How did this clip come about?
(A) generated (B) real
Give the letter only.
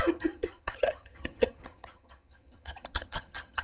A